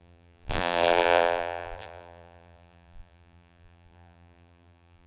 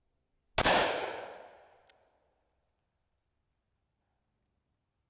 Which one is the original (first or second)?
second